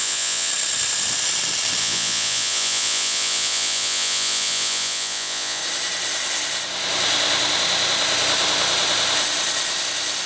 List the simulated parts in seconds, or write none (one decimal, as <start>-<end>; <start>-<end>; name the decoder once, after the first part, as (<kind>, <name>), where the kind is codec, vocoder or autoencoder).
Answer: 0.0-0.5 (vocoder, Vocos); 1.8-5.6